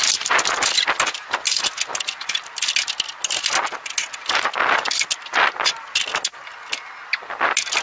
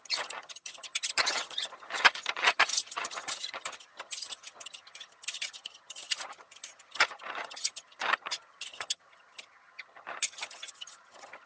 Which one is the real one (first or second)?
first